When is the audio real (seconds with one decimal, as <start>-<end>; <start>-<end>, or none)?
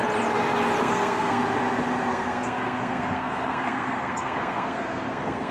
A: 0.0-0.8; 1.4-2.1